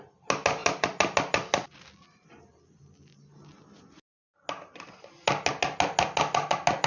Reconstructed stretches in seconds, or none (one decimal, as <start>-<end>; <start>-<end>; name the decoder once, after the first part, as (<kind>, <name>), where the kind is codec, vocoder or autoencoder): none

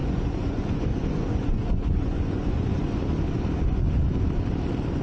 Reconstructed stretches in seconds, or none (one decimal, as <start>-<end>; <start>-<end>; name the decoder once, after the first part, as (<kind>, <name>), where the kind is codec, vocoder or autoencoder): 0.0-3.0 (vocoder, Vocos)

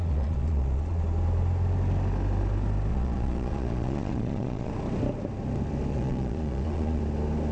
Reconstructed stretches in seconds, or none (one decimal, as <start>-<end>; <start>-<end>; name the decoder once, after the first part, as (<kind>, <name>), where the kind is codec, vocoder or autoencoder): 0.0-1.0 (vocoder, Vocos); 2.9-4.7; 5.9-7.0